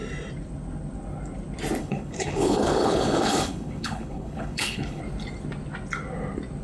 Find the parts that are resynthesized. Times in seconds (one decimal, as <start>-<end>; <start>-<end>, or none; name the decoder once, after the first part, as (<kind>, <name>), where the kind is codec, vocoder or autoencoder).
1.8-5.0 (codec, HILCodec)